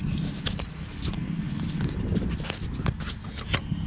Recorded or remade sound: recorded